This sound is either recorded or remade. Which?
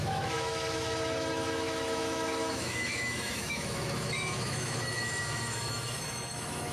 remade